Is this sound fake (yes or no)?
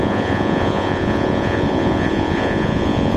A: yes